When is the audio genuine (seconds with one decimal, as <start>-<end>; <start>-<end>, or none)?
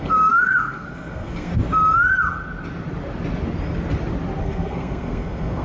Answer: 1.5-4.4